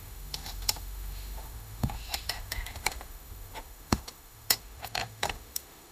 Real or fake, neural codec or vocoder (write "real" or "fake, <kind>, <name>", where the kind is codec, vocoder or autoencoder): fake, autoencoder, DAC-VAE